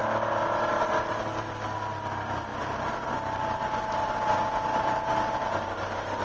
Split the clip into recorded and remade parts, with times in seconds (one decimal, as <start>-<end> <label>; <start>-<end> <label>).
0.0-6.2 recorded

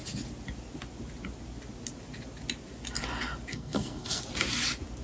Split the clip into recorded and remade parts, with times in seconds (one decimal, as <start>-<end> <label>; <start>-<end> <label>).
0.0-3.5 recorded; 3.5-4.2 remade; 4.2-5.0 recorded

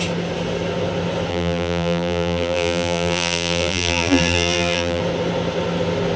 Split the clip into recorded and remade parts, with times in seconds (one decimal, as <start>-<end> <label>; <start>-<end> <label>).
0.0-1.3 recorded; 1.3-5.0 remade; 5.0-6.2 recorded

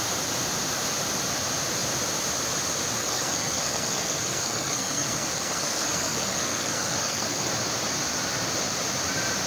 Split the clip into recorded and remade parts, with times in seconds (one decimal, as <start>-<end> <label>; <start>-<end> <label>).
0.0-3.0 recorded; 3.0-7.5 remade; 7.5-9.5 recorded

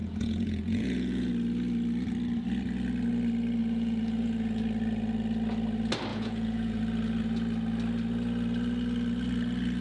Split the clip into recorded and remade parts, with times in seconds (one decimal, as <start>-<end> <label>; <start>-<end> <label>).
0.0-1.3 remade; 1.3-3.6 recorded; 3.6-4.6 remade; 4.6-6.1 recorded; 6.1-6.8 remade; 6.8-9.8 recorded

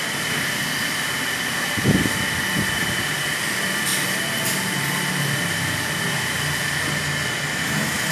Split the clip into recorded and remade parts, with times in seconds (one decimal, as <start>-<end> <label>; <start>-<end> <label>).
0.0-3.9 recorded; 3.9-6.0 remade; 6.0-8.1 recorded